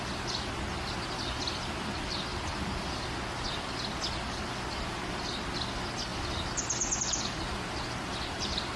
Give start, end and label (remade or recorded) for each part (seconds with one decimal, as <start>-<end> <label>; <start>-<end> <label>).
0.0-8.8 recorded